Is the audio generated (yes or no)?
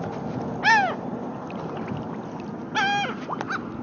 no